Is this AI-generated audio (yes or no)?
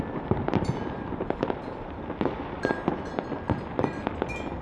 yes